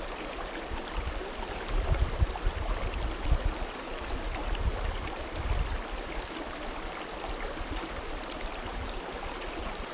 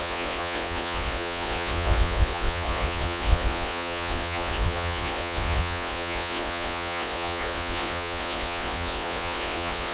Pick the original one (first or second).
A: first